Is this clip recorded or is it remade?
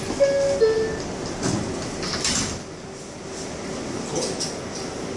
recorded